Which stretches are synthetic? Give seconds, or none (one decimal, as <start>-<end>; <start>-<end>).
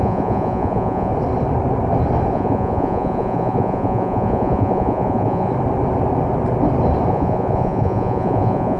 0.0-1.1; 2.3-5.5; 7.1-8.8